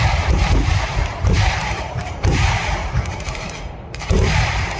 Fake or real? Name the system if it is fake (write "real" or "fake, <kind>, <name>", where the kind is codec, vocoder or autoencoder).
fake, vocoder, BigVGAN v2